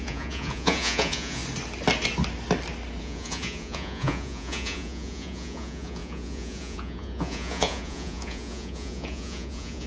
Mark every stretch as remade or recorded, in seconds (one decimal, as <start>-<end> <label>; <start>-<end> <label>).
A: 0.0-1.4 remade; 1.4-3.0 recorded; 3.0-9.9 remade